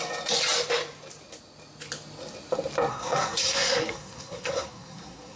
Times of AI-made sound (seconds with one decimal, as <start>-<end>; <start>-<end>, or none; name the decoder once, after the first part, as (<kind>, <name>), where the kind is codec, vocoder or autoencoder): 2.9-5.4 (codec, SNAC)